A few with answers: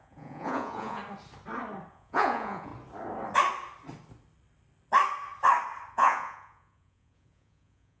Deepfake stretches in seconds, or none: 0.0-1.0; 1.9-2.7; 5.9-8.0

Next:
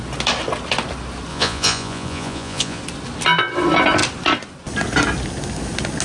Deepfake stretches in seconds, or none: 1.3-2.8

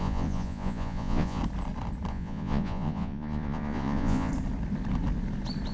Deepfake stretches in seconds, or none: 0.0-1.4; 2.1-4.3

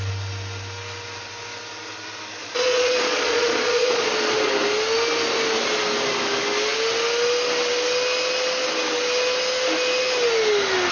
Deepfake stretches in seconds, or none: 2.4-4.5

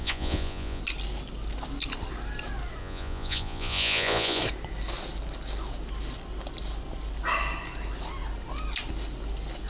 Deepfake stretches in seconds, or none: 0.0-0.8; 2.8-4.4

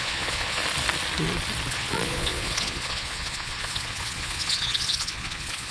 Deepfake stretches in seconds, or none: 0.0-0.6; 1.7-5.7

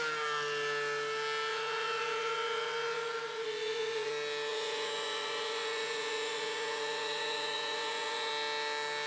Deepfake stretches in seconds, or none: 1.5-4.1; 4.5-8.3